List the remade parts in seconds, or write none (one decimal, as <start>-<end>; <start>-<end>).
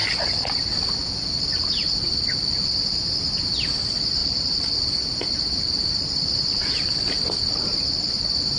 4.2-5.2